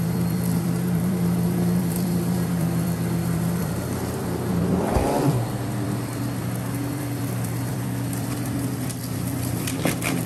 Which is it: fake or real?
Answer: fake